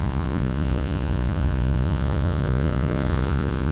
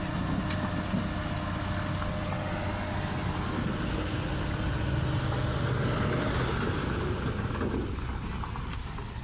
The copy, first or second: first